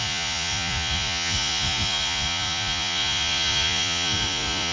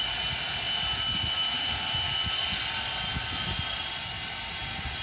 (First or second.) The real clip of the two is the second